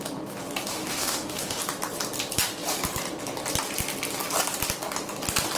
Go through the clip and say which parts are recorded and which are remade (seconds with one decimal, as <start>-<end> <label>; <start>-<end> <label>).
0.0-0.7 recorded; 0.7-1.6 remade; 1.6-5.6 recorded